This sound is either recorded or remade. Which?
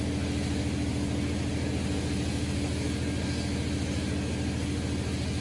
recorded